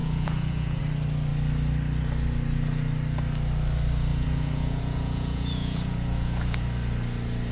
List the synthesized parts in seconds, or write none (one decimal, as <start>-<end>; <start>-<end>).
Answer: 0.0-0.8; 4.1-6.6